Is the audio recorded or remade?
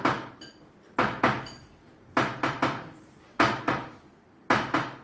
recorded